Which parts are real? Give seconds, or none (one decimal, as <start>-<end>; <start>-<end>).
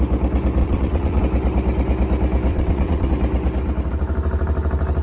0.0-0.6; 1.2-2.5; 3.1-5.0